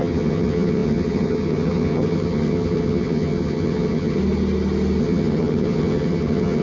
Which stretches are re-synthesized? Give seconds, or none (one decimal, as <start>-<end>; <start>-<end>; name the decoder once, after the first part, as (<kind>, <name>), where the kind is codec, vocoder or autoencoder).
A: 0.0-4.2 (vocoder, HiFi-GAN); 5.0-6.6